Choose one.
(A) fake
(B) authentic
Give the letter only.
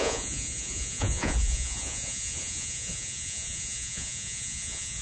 A